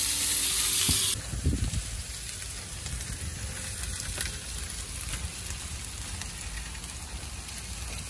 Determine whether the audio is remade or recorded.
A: recorded